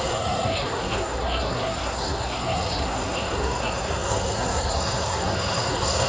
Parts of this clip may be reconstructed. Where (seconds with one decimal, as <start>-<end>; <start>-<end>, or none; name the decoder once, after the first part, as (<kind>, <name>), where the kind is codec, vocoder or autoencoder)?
0.0-6.1 (codec, SNAC)

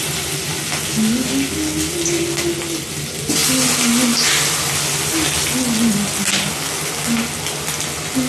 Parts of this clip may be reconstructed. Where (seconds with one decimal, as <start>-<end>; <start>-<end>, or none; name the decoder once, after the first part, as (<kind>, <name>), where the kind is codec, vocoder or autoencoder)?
none

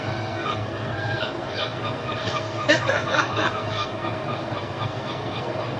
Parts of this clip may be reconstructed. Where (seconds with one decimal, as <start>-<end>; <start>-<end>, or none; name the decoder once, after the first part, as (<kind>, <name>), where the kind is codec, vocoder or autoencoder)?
0.0-5.8 (codec, SNAC)

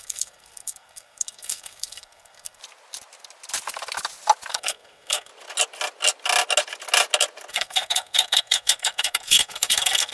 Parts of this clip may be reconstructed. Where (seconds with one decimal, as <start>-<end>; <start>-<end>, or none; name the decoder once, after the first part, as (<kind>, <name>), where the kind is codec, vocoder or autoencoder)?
0.0-2.6 (codec, SNAC); 4.5-5.3; 7.5-10.1

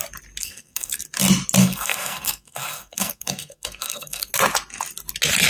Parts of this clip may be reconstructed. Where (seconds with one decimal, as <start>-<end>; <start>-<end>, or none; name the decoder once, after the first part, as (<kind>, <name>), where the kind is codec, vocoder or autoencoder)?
0.4-1.0 (codec, SNAC); 1.6-4.3